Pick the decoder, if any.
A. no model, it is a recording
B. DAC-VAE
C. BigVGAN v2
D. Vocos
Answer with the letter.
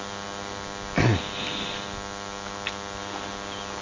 A